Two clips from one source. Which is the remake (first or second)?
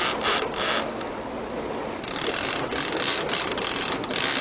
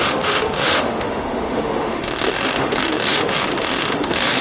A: second